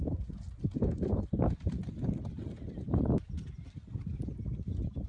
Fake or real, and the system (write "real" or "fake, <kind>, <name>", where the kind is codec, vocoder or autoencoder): real